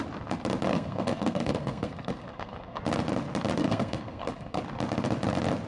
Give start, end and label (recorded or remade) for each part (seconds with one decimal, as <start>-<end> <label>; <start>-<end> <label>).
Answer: 0.0-0.7 recorded; 0.7-2.8 remade; 2.8-3.6 recorded; 3.6-4.6 remade; 4.6-5.7 recorded